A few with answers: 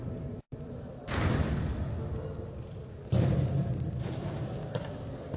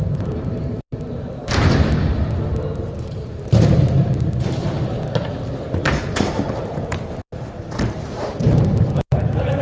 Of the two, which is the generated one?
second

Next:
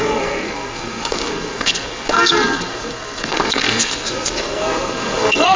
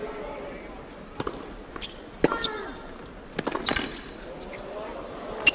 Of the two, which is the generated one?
first